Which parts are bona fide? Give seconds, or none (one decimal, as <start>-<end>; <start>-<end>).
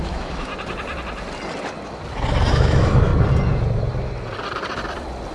0.5-2.5; 3.1-5.3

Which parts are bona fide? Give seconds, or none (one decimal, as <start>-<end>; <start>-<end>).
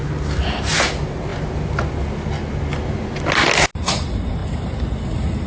0.0-5.5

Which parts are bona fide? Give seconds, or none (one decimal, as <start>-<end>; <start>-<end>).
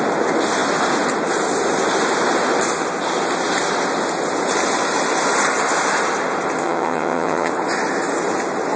0.0-6.6; 7.5-8.8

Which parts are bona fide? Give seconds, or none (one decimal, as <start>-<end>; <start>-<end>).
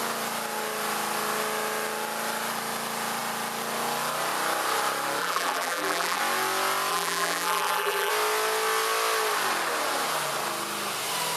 0.0-5.2; 6.2-6.9; 8.1-11.4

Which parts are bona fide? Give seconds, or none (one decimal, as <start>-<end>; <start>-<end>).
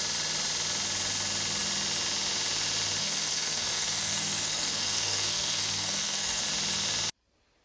0.0-3.0; 6.4-7.6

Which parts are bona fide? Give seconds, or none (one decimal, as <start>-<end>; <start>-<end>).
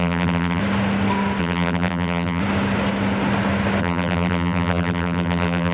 0.6-1.4; 2.4-3.8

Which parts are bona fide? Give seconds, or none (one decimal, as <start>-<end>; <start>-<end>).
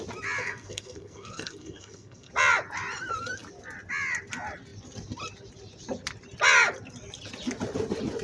0.0-0.4; 2.3-8.2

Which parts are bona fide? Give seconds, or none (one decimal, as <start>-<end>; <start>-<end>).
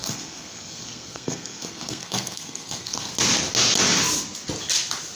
3.1-5.2